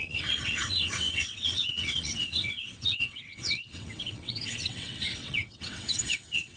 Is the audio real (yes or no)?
no